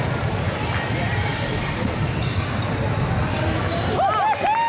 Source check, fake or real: real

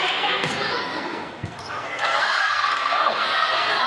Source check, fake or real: fake